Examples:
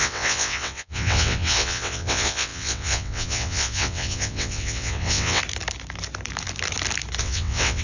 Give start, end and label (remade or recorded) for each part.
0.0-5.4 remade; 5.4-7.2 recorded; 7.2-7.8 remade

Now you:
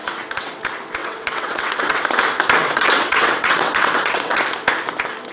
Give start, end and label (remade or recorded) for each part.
0.0-0.6 remade; 0.6-1.0 recorded; 1.0-2.0 remade; 2.0-2.6 recorded; 2.6-4.4 remade; 4.4-5.3 recorded

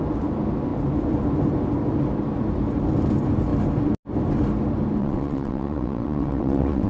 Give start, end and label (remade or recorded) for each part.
0.0-5.0 recorded; 5.0-6.9 remade

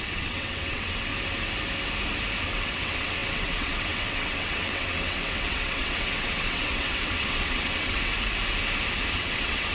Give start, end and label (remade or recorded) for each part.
0.0-1.1 remade; 1.1-2.4 recorded; 2.4-8.1 remade; 8.1-9.1 recorded; 9.1-9.7 remade